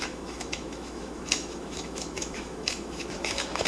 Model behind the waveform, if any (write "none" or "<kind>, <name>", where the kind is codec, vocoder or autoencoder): autoencoder, DAC-VAE